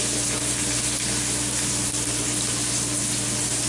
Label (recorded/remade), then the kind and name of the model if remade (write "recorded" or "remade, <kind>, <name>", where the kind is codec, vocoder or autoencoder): recorded